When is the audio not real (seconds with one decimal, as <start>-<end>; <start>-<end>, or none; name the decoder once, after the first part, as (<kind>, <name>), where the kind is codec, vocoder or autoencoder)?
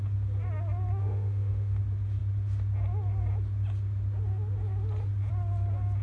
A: 1.0-1.8 (autoencoder, DAC-VAE)